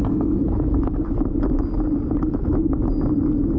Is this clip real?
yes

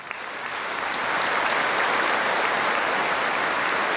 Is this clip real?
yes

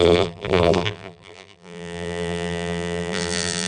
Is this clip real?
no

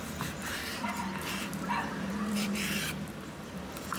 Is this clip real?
no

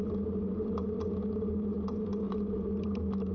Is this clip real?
yes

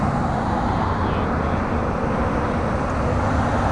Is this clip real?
yes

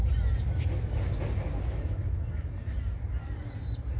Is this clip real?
yes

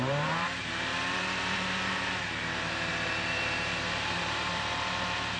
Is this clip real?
no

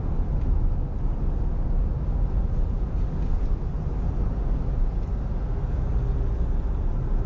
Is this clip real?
yes